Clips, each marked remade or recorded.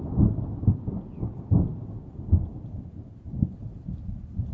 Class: recorded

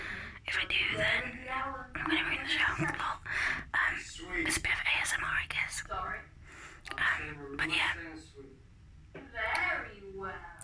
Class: recorded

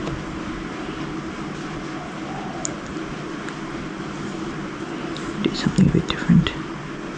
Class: recorded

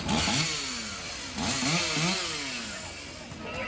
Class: recorded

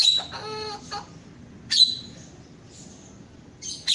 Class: recorded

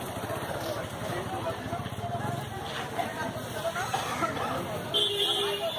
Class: recorded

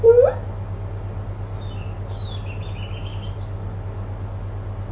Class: recorded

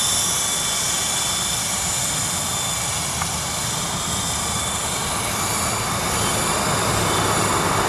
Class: recorded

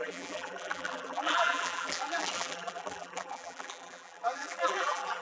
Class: remade